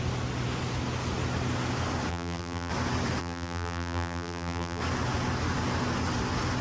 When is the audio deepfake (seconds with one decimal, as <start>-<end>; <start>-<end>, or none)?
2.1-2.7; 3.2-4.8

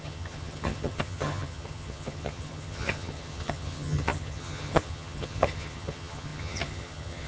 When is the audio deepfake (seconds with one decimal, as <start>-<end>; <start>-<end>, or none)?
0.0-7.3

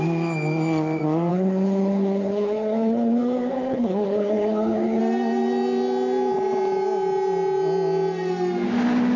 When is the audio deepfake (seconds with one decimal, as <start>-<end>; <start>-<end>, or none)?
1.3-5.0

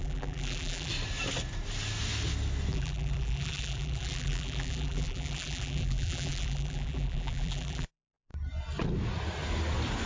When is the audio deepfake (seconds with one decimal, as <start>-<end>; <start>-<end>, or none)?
0.0-0.9; 2.7-8.3

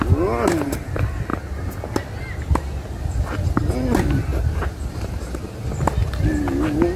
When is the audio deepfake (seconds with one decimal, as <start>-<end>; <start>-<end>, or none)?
none

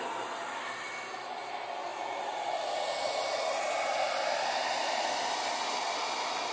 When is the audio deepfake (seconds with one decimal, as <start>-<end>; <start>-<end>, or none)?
1.9-5.3

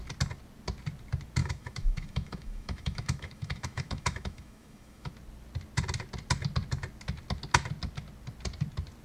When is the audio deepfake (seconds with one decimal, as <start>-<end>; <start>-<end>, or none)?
1.4-5.1

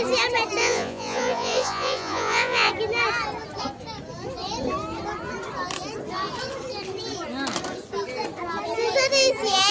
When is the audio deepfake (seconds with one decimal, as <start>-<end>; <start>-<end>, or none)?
0.6-2.7